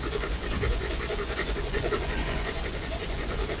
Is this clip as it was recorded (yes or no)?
no